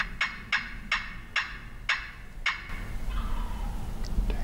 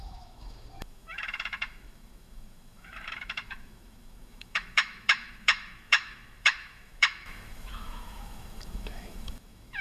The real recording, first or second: first